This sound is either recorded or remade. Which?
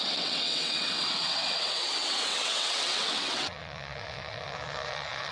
remade